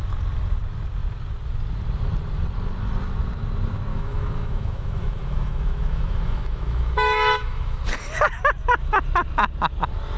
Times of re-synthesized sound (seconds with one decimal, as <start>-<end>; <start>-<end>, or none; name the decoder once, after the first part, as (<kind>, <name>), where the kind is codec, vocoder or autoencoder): 3.9-7.8 (autoencoder, DAC-VAE)